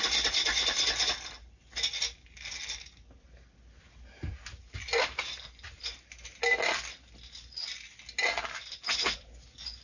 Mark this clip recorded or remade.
recorded